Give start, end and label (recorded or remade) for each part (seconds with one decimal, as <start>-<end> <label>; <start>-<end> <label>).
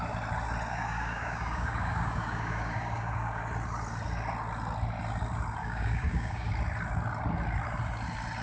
0.0-0.7 recorded; 0.7-3.4 remade; 3.4-5.6 recorded; 5.6-6.5 remade; 6.5-8.4 recorded